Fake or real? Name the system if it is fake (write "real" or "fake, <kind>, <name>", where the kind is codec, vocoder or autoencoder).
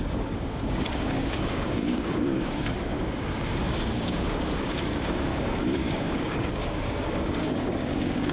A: fake, codec, DAC